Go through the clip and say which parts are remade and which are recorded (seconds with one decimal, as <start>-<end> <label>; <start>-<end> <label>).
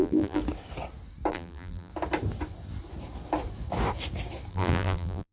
0.0-0.4 remade; 0.4-1.3 recorded; 1.3-1.9 remade; 1.9-4.5 recorded; 4.5-5.3 remade